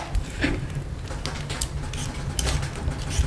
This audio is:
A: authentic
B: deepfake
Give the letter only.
A